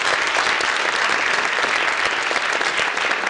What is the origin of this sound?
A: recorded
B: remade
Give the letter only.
A